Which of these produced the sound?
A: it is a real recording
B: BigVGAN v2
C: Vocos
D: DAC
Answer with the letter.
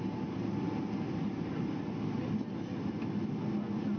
A